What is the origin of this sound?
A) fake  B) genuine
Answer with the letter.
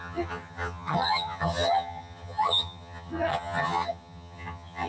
A